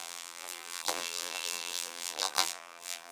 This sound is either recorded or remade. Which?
remade